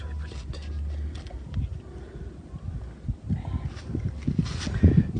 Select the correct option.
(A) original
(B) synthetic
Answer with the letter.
A